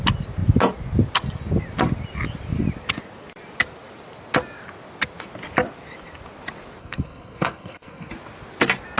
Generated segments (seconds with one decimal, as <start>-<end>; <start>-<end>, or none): 6.8-8.1